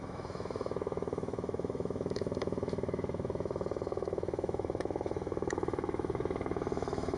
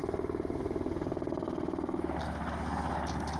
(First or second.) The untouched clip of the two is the second